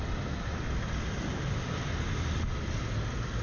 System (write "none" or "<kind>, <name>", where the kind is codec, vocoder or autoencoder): none